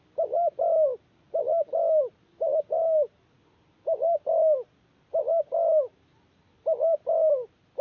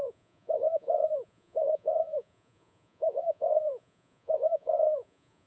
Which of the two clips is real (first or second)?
first